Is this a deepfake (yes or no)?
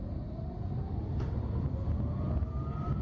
no